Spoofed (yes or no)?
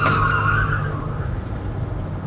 no